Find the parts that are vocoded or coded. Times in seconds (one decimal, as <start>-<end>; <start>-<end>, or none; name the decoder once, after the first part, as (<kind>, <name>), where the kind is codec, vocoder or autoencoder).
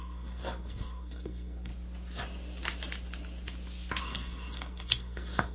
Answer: 0.0-1.7 (codec, SNAC); 4.0-5.5